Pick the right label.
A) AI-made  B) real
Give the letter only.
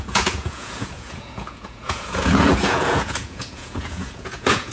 A